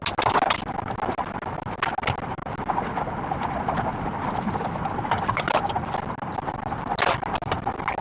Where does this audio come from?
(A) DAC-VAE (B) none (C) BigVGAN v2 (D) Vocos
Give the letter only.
B